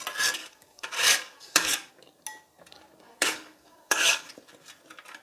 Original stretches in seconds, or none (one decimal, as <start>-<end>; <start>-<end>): 0.0-0.4; 1.9-3.1; 4.3-5.2